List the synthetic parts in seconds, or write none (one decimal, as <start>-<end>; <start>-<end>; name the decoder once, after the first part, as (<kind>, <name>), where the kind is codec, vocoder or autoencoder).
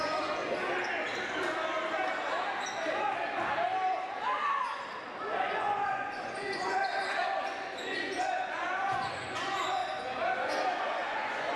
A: 0.0-0.4 (vocoder, Vocos); 5.4-9.8; 10.4-11.6